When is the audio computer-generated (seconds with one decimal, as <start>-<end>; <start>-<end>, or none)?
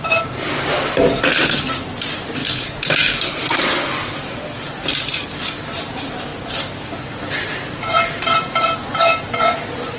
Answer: 0.0-2.4; 5.2-6.3; 7.0-10.0